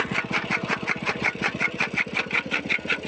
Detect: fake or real real